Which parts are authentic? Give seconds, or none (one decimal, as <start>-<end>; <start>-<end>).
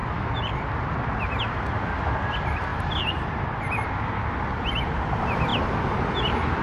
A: 0.0-1.2; 5.5-6.6